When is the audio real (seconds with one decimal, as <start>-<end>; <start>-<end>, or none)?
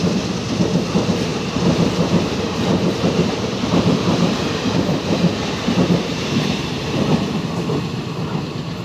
0.0-1.3; 1.9-2.7; 4.4-6.1; 7.0-8.8